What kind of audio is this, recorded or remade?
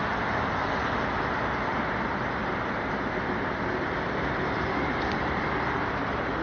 recorded